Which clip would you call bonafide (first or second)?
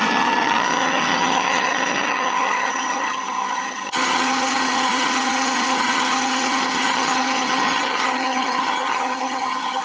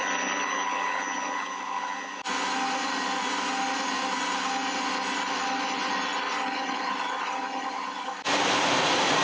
second